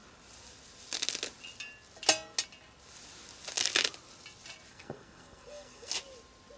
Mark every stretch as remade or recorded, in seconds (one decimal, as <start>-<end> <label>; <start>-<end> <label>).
0.0-4.7 recorded; 4.7-5.9 remade; 5.9-6.6 recorded